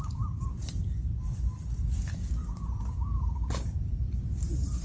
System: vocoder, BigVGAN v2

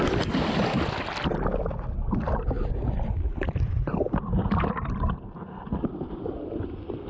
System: none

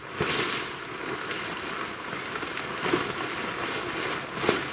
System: none